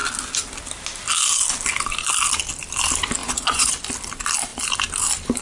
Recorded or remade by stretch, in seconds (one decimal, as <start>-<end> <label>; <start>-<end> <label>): 0.0-3.2 recorded; 3.2-3.7 remade; 3.7-5.4 recorded